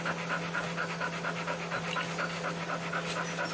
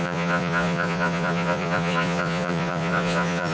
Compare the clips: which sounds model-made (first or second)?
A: second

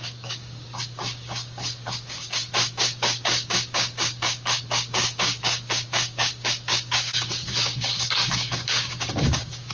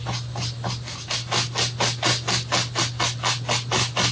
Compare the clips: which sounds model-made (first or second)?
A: first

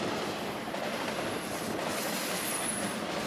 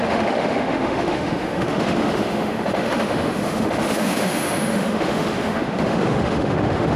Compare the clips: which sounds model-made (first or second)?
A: second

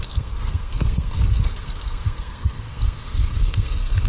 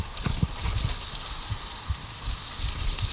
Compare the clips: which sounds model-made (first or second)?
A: first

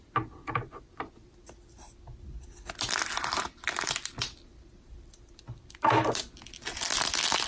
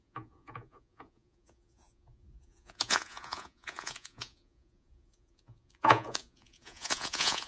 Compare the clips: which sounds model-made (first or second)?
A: second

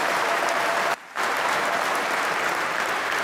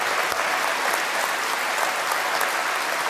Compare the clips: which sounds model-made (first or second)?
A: first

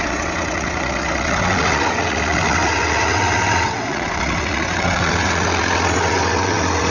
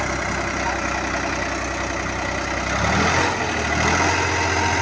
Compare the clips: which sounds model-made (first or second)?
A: first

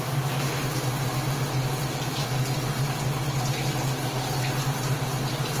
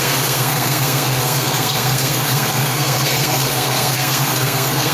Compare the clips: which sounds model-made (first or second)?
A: second